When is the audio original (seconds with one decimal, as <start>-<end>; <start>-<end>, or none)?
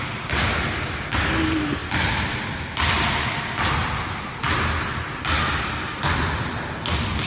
0.0-7.3